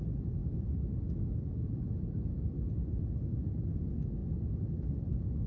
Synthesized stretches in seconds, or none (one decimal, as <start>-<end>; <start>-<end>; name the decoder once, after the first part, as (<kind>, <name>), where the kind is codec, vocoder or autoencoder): none